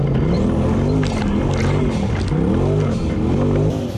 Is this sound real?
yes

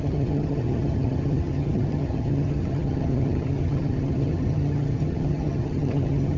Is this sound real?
no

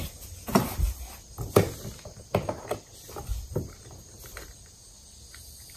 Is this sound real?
yes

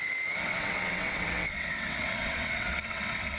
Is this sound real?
no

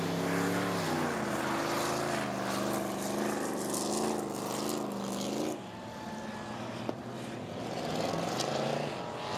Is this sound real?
yes